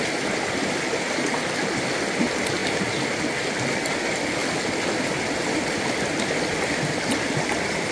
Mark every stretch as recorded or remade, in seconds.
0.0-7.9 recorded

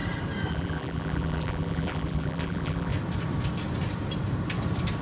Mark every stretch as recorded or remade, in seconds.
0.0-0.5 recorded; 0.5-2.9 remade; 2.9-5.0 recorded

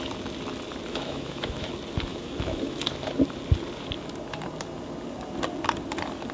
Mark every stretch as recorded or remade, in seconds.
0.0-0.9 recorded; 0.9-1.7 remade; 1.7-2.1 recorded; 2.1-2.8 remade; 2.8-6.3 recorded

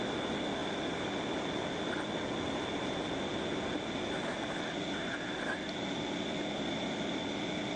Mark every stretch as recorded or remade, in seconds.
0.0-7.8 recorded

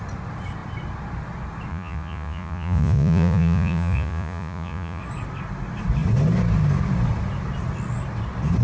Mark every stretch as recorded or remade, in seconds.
0.0-1.7 recorded; 1.7-5.0 remade; 5.0-8.6 recorded

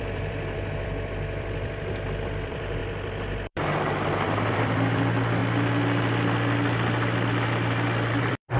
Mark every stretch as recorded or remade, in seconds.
0.0-2.8 remade; 2.8-3.5 recorded; 3.5-5.4 remade; 5.4-8.2 recorded; 8.2-8.6 remade

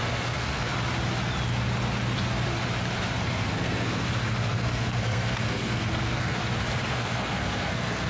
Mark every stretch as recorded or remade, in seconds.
0.0-0.7 remade; 0.7-3.2 recorded; 3.2-4.0 remade; 4.0-4.5 recorded; 4.5-6.4 remade; 6.4-6.9 recorded; 6.9-8.1 remade